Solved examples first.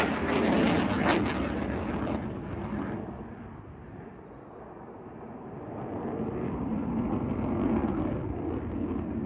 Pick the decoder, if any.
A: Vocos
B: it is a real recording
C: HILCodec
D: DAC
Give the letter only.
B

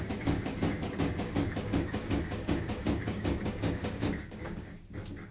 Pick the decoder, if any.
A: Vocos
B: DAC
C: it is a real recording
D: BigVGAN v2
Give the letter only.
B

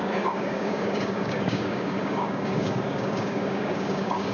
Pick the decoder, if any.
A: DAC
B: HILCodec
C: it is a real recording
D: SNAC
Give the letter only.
A